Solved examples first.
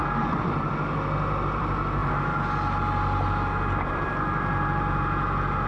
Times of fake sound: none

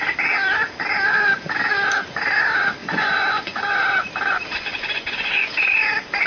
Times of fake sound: 2.8-3.6 (vocoder, Vocos); 4.7-5.5

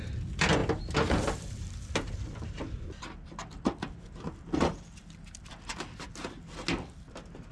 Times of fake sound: 0.0-0.6 (vocoder, BigVGAN v2); 1.1-5.7; 6.7-7.5

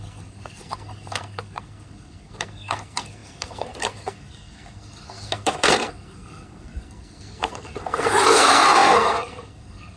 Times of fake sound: 0.0-10.0 (codec, SNAC)

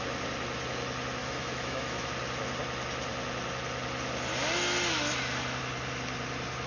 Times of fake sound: 1.2-2.1 (autoencoder, DAC-VAE)

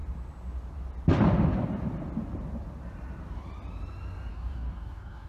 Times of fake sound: 4.3-5.3 (codec, DAC)